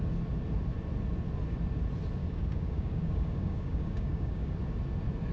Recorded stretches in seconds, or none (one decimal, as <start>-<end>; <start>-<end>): 0.0-2.2; 4.6-5.3